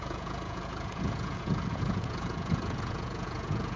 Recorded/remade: remade